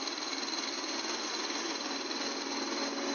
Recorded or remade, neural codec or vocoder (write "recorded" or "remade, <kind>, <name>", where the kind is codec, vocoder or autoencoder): recorded